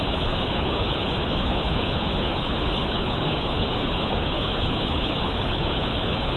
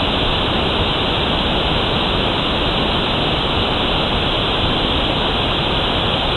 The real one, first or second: second